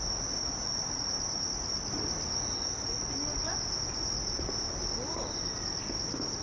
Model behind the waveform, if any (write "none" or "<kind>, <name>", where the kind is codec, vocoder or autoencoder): none